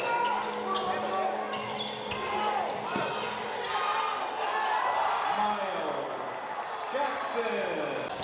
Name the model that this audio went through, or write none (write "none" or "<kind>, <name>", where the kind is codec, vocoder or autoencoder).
none